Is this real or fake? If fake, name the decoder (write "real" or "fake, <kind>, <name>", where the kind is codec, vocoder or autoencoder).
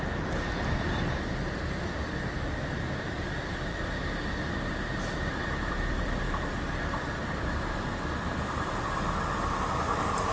fake, vocoder, BigVGAN v2